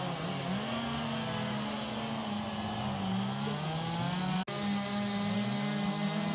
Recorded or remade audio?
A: recorded